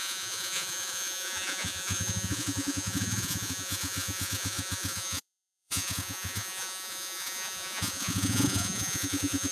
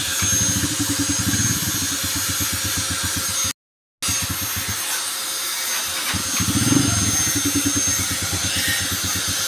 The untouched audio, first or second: second